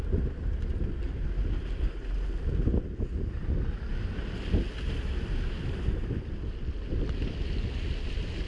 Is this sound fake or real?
real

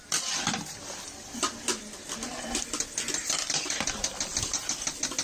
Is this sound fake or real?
real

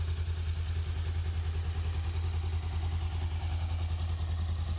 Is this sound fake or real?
real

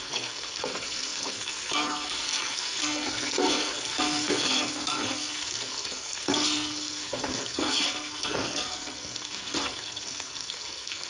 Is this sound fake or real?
fake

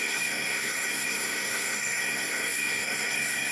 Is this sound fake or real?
fake